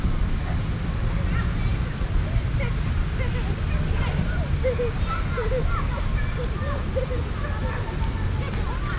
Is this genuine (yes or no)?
yes